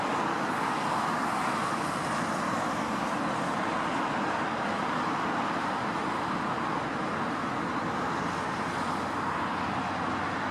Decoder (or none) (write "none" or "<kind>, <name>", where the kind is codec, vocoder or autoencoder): none